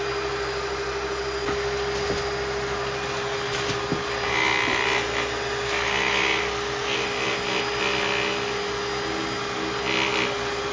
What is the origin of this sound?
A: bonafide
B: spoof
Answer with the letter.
A